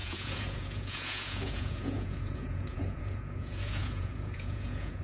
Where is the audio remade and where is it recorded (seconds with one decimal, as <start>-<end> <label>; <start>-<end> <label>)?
0.0-5.0 remade